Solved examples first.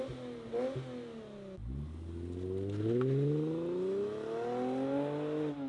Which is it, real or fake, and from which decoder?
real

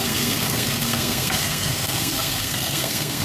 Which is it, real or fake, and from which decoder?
fake, codec, SNAC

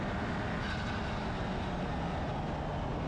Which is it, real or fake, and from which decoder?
real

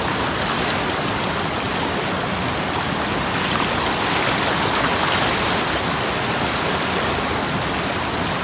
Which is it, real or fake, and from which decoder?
real